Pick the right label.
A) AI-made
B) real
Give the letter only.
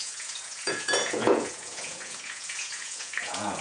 A